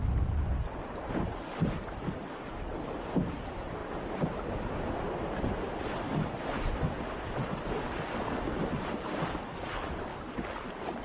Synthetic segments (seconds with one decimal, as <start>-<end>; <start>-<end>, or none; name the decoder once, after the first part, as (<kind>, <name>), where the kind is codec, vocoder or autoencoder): 0.0-3.8 (vocoder, BigVGAN v2); 4.4-10.1